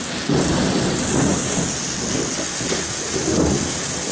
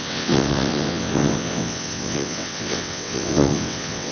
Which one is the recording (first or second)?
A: first